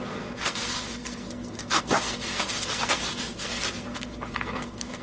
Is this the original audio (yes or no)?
no